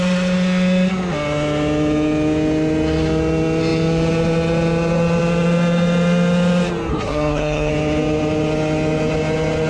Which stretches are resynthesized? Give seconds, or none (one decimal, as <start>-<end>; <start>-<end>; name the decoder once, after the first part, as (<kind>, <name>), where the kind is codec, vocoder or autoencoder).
6.9-7.7 (codec, SNAC)